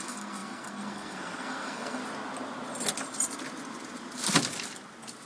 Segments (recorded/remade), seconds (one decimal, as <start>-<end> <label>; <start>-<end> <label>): 0.0-2.0 remade; 2.0-5.3 recorded